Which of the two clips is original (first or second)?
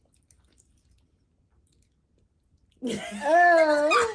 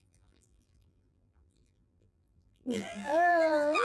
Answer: first